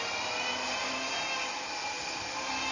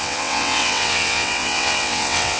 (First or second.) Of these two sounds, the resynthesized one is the second